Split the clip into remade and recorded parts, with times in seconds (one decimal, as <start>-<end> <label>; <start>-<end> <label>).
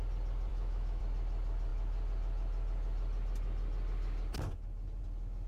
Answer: 0.0-0.5 recorded; 0.5-1.0 remade; 1.0-5.5 recorded